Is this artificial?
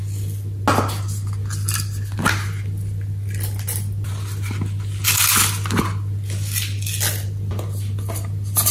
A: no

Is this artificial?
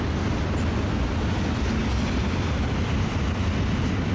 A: no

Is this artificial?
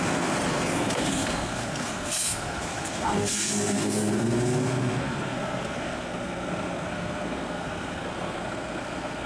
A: yes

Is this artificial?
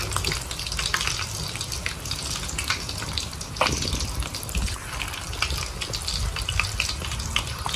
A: no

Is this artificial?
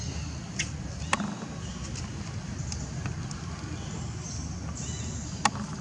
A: no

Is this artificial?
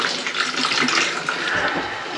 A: no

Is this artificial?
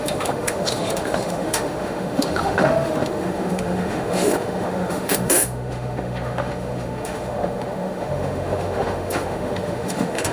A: yes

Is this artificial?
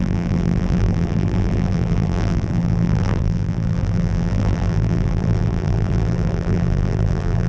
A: yes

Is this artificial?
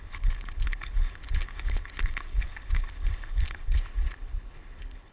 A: yes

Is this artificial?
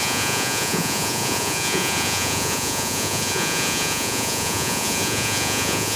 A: yes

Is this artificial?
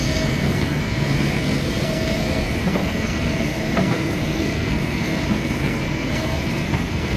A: yes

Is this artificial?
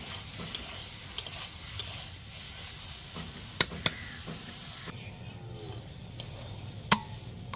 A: no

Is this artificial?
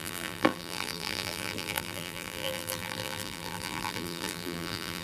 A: yes